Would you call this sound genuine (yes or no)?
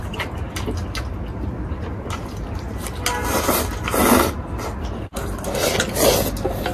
yes